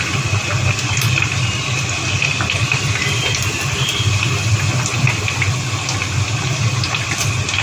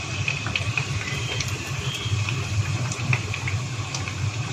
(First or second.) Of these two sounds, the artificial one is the second